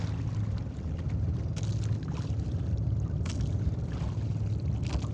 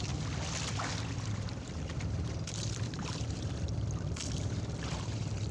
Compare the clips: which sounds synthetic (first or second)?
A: second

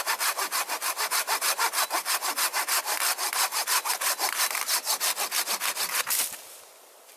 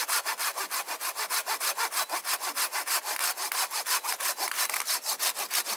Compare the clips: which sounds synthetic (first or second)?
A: first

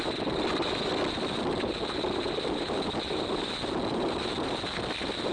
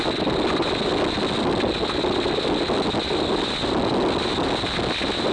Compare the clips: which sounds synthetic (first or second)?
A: first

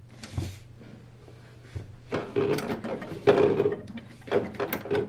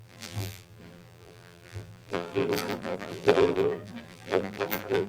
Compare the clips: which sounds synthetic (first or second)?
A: second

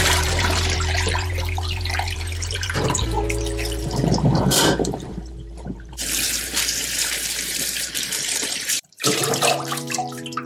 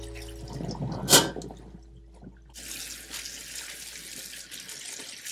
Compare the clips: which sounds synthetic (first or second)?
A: first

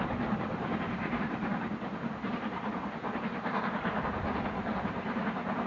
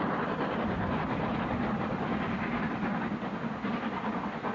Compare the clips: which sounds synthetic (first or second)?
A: first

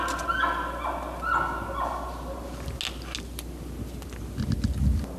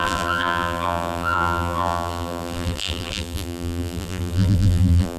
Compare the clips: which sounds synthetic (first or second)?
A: second